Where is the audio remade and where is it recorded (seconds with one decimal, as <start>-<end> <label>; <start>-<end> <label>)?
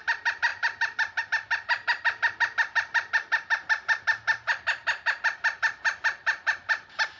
0.0-7.2 recorded